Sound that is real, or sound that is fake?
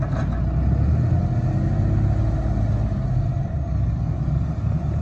real